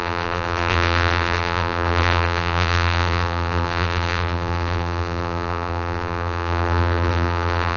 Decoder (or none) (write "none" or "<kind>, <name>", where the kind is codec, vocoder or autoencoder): vocoder, BigVGAN v2